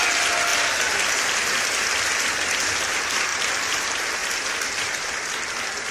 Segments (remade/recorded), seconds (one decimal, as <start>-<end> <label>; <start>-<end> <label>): 0.0-3.3 recorded; 3.3-3.8 remade; 3.8-4.2 recorded; 4.2-5.3 remade; 5.3-5.9 recorded